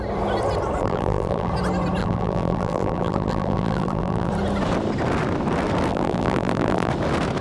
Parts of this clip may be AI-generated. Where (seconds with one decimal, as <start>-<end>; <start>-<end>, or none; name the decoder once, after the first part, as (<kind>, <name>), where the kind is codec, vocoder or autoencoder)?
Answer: 0.8-1.5 (vocoder, BigVGAN v2); 2.0-4.3; 5.9-6.9